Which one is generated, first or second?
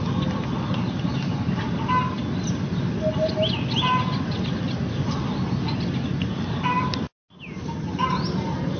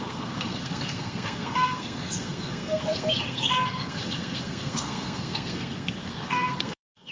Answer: second